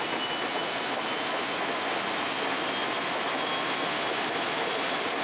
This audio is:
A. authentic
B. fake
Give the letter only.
A